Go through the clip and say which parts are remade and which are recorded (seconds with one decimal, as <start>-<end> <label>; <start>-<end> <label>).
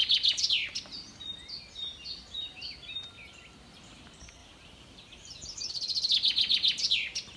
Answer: 0.0-4.4 recorded; 4.4-5.7 remade; 5.7-7.4 recorded